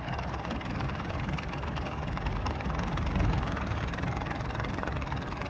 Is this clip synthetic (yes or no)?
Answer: yes